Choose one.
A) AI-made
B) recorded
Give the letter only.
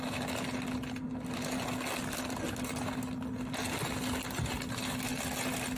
B